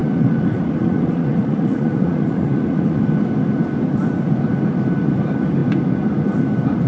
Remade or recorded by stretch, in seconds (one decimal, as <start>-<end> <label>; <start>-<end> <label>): 0.0-3.0 remade; 3.0-6.9 recorded